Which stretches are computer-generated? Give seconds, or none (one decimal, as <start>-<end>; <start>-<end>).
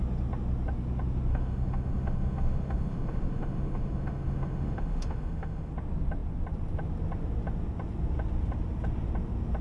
1.3-5.7